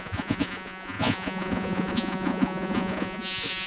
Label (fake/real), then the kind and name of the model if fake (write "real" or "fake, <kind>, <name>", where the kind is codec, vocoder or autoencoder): fake, vocoder, Vocos